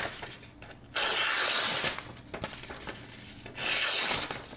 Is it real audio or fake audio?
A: real